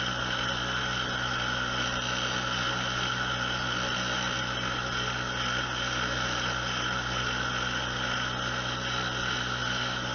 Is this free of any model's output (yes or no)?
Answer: yes